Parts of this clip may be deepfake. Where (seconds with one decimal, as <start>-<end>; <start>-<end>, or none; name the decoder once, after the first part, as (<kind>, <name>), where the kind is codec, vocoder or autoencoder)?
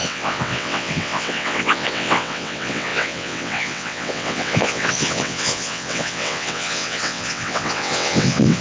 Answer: 0.0-8.6 (vocoder, WaveNeXt)